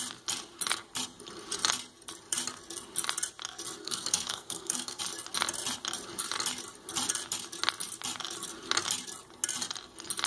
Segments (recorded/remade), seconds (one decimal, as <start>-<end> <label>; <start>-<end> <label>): 0.0-3.8 recorded; 3.8-5.0 remade; 5.0-10.3 recorded